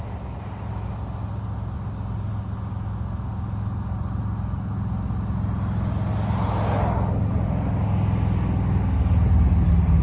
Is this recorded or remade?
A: recorded